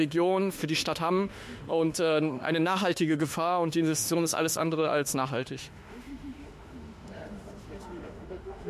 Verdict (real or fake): fake